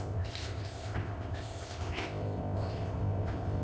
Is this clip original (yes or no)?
no